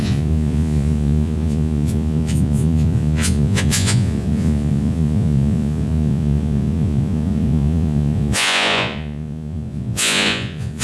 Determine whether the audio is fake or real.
fake